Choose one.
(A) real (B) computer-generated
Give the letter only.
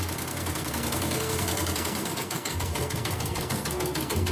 B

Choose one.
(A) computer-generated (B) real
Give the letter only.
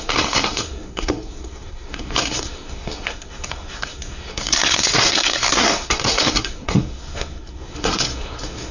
A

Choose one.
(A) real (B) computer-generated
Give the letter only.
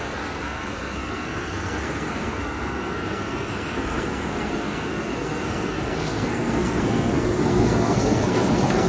B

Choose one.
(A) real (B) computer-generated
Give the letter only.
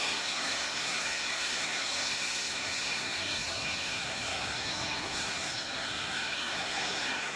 B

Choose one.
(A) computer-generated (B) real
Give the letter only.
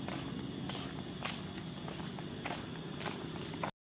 B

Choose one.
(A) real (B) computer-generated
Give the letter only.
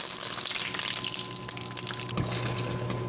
A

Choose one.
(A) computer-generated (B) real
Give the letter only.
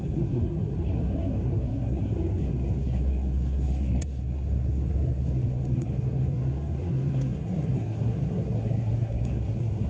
A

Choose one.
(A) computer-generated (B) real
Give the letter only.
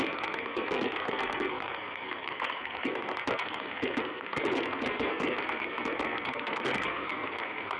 A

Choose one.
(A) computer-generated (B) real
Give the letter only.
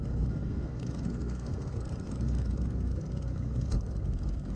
A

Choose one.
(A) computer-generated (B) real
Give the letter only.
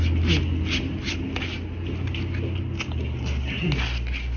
B